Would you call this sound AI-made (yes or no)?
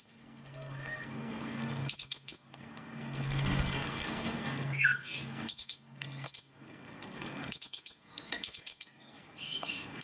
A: yes